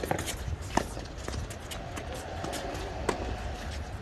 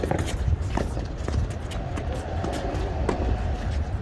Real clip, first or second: first